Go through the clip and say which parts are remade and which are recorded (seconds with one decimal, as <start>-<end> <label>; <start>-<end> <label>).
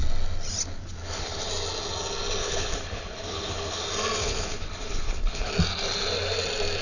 0.0-1.0 recorded; 1.0-1.5 remade; 1.5-2.4 recorded; 2.4-3.8 remade; 3.8-4.2 recorded; 4.2-5.5 remade; 5.5-6.8 recorded